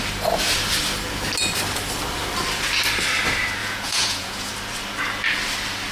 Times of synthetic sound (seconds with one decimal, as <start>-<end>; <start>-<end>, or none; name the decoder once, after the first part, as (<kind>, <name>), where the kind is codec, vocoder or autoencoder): 3.6-4.5 (vocoder, Vocos)